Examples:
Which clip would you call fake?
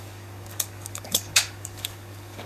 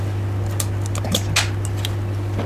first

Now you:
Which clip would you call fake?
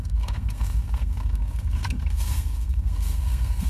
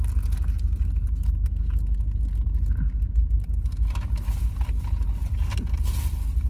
first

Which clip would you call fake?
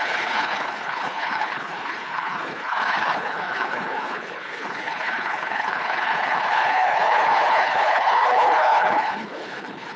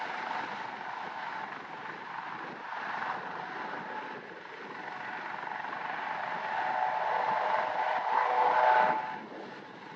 first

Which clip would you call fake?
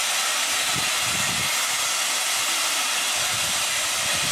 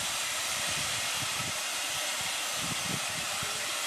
second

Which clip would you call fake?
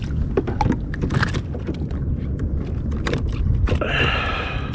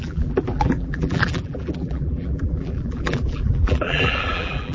second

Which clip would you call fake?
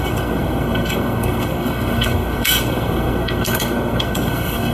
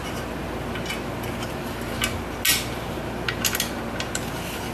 first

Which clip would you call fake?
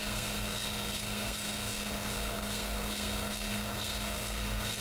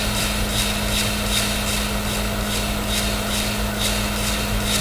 first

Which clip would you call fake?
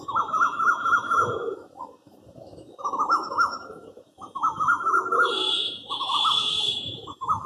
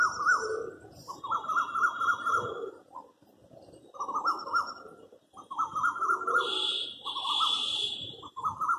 first